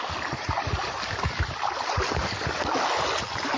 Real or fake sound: real